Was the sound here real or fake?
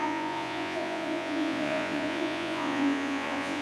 fake